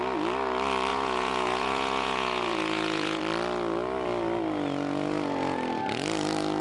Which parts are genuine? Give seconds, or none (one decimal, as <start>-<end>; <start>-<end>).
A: 0.0-0.9; 3.2-6.6

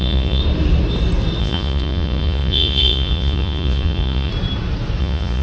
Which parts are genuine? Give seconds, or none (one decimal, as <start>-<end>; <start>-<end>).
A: 0.4-1.4; 4.3-5.0

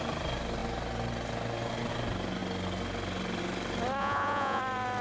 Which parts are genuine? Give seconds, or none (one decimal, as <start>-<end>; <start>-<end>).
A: 0.0-4.0; 4.6-5.0

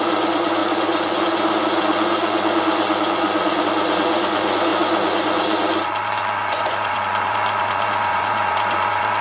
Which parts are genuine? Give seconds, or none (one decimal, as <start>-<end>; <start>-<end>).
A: none

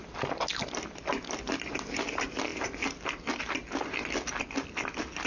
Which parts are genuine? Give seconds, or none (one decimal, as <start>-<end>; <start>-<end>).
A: 0.0-5.3

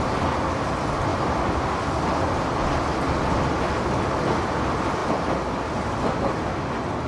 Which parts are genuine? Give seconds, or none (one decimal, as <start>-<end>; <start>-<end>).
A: 0.0-7.1

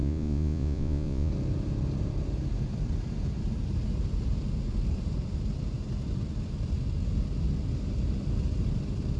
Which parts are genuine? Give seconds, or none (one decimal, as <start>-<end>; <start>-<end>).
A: 1.3-9.2

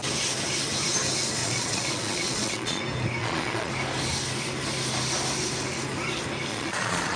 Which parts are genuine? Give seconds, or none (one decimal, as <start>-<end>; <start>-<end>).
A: 0.0-1.4; 2.8-3.2; 3.7-6.5